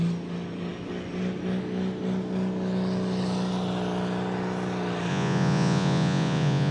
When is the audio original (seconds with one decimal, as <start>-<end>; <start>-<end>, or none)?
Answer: 0.0-5.1